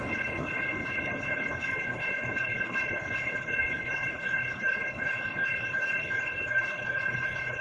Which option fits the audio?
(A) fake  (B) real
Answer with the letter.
A